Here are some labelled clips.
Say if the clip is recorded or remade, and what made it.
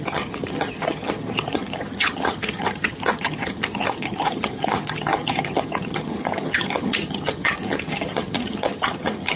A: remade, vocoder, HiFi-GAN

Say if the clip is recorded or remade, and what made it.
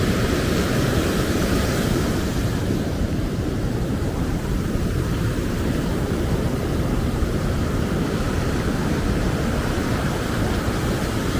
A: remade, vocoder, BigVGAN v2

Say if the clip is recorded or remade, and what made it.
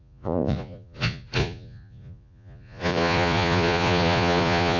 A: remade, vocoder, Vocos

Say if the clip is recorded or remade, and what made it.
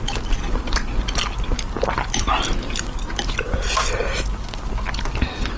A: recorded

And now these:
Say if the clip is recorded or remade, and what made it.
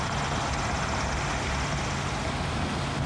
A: recorded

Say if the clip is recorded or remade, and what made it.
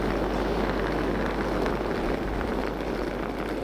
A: recorded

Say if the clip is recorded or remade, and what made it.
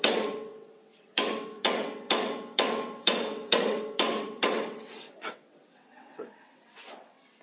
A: remade, vocoder, WaveNeXt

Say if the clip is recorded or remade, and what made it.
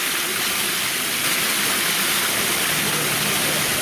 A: recorded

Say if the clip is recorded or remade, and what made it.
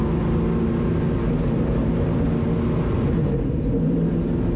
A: recorded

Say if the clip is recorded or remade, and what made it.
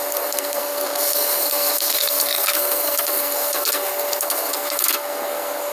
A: remade, codec, SNAC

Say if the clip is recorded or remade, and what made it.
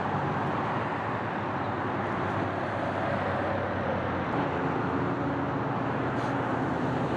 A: recorded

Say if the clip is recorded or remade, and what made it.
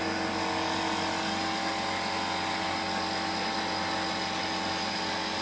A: recorded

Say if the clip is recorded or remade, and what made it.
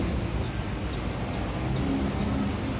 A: recorded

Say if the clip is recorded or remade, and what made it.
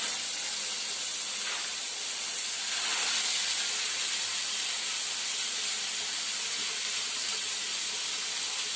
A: recorded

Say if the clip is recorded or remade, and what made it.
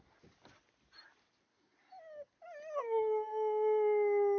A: recorded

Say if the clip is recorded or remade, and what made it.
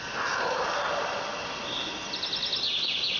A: recorded